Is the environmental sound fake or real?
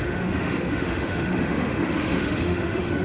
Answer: fake